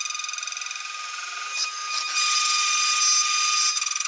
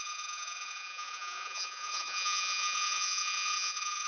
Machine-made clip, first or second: second